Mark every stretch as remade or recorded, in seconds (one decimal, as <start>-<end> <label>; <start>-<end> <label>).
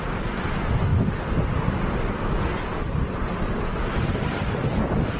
0.0-5.2 remade